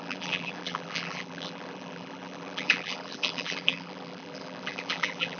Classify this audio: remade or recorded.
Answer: remade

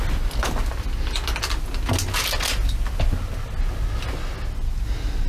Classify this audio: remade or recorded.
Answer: recorded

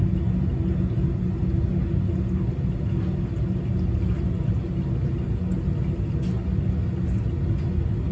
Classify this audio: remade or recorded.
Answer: recorded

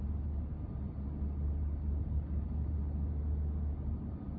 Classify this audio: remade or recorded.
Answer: recorded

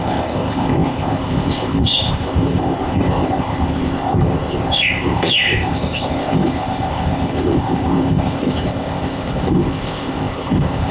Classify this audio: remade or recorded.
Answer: remade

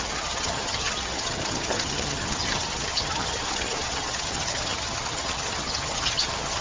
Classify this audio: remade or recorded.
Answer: remade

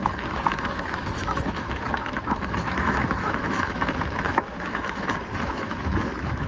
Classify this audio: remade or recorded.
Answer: remade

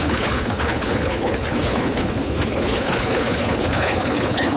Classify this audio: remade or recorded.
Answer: remade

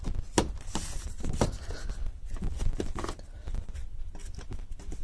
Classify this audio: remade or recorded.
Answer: recorded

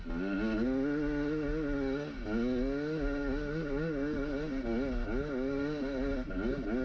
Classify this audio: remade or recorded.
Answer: recorded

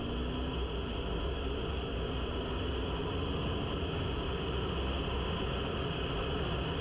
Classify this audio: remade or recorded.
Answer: recorded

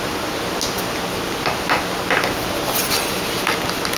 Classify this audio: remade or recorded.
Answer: recorded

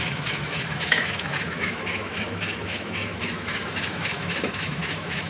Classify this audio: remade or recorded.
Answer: remade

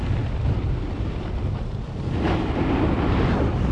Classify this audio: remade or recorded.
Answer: recorded